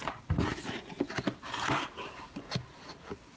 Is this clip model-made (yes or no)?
no